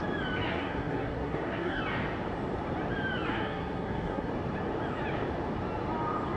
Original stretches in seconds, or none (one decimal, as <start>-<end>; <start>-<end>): 0.0-0.5; 1.8-3.3; 4.3-6.4